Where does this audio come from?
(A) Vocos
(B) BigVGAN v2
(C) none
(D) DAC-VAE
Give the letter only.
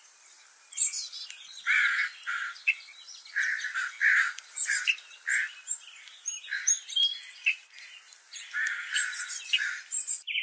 B